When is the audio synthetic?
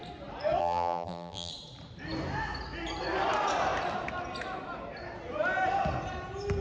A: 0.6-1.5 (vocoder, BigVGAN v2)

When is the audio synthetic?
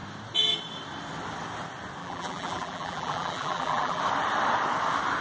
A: 2.0-4.0 (vocoder, BigVGAN v2)